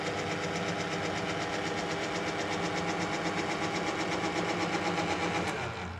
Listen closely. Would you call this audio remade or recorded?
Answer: recorded